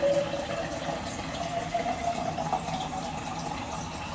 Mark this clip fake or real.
real